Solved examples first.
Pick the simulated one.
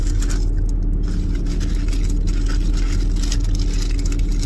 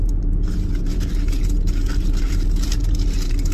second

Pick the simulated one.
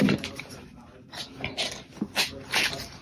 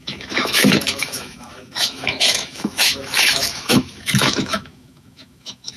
second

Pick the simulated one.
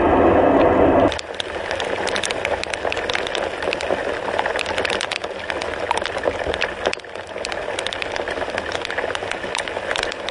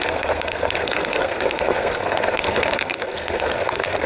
second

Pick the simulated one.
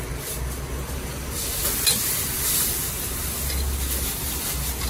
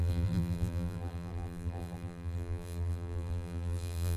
second